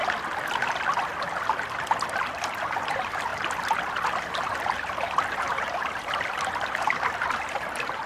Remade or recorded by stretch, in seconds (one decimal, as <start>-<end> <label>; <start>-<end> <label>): 0.0-2.1 recorded; 2.1-3.3 remade; 3.3-4.2 recorded; 4.2-8.1 remade